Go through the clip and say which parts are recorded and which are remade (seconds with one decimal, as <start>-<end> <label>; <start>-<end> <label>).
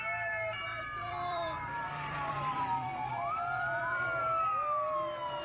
0.0-1.0 recorded; 1.0-4.2 remade; 4.2-5.4 recorded